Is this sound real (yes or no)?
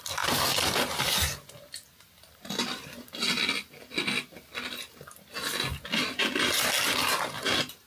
yes